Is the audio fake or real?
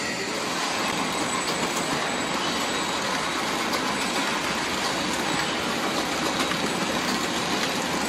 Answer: real